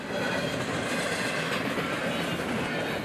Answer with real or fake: real